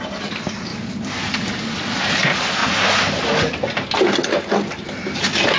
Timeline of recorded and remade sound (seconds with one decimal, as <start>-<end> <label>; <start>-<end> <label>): 0.0-5.6 recorded